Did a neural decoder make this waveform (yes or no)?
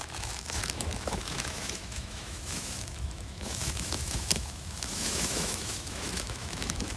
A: yes